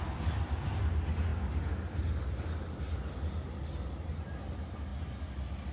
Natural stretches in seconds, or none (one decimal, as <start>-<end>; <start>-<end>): 0.0-5.7